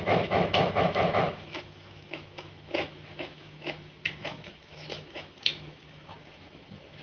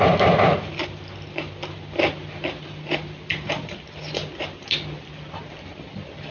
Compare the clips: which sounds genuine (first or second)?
second